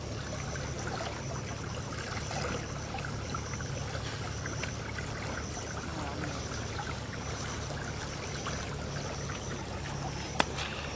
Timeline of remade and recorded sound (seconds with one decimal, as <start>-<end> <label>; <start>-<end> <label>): 0.0-11.0 recorded